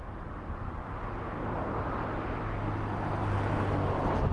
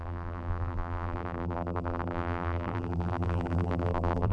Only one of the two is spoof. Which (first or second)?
second